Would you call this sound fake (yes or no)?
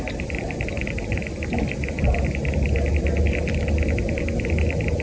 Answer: no